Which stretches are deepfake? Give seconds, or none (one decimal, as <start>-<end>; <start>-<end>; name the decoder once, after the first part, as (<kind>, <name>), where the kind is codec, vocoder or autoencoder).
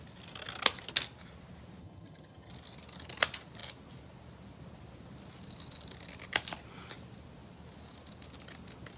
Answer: 1.8-2.5 (vocoder, HiFi-GAN)